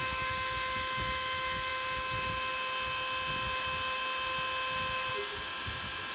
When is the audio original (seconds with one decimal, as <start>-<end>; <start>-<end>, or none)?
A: 0.0-6.1